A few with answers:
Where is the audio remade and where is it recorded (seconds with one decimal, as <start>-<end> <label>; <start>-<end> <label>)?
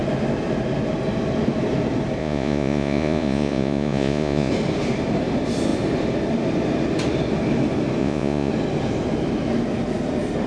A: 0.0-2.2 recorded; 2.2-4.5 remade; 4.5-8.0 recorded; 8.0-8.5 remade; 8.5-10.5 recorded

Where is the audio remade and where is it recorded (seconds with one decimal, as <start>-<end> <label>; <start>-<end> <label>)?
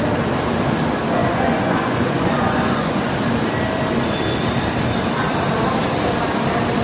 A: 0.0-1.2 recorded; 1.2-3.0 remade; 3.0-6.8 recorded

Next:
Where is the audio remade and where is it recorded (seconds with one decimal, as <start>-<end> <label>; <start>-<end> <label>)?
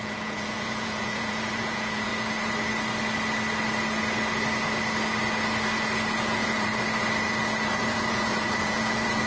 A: 0.0-2.1 remade; 2.1-6.1 recorded; 6.1-6.7 remade; 6.7-7.8 recorded; 7.8-9.3 remade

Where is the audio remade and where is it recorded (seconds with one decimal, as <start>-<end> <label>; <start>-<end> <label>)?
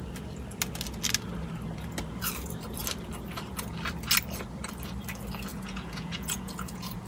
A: 0.0-5.5 recorded; 5.5-7.1 remade